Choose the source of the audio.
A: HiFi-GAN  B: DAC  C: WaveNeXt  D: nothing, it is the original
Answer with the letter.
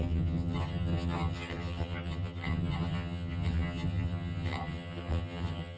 A